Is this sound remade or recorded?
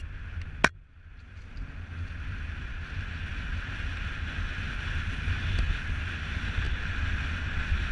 recorded